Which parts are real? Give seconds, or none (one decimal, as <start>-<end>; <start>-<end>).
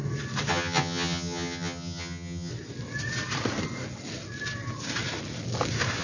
0.0-0.5; 2.5-6.0